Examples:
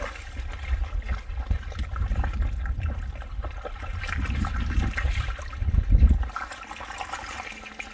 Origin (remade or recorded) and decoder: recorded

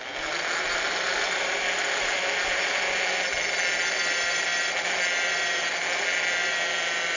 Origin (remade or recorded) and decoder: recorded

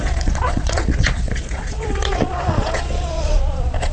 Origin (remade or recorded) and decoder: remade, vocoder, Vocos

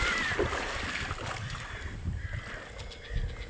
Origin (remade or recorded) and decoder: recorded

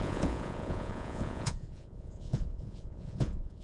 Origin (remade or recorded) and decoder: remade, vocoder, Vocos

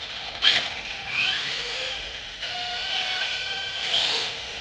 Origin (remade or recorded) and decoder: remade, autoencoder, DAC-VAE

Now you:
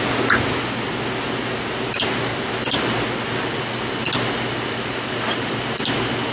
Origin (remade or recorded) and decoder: recorded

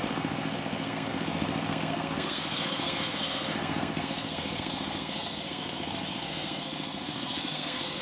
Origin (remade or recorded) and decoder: remade, codec, SNAC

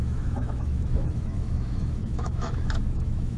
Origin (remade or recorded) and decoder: remade, autoencoder, DAC-VAE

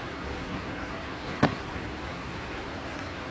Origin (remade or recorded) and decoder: remade, codec, SNAC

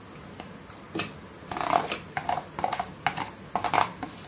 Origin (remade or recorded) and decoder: recorded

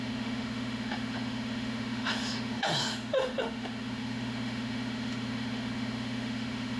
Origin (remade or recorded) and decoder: remade, autoencoder, DAC-VAE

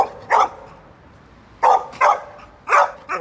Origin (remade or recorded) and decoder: recorded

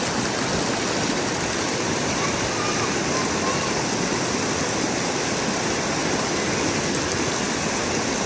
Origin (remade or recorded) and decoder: recorded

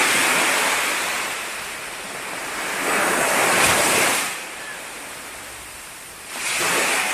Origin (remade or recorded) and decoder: remade, vocoder, BigVGAN v2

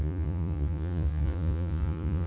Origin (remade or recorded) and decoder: remade, vocoder, Vocos